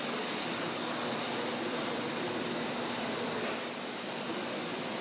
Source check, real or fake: real